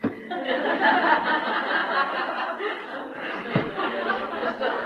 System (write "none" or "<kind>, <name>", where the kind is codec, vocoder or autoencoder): none